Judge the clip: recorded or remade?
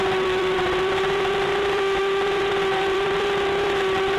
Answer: remade